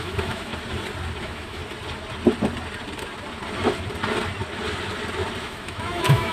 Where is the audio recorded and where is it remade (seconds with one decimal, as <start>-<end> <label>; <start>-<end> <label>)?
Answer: 0.0-0.5 remade; 0.5-1.2 recorded; 1.2-1.6 remade; 1.6-5.4 recorded; 5.4-6.3 remade